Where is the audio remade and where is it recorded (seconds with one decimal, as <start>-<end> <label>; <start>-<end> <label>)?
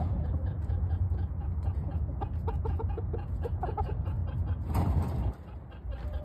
0.0-4.2 remade; 4.2-6.2 recorded